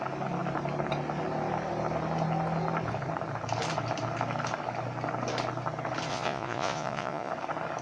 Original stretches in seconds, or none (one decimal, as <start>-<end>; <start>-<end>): 0.0-6.1; 7.3-7.8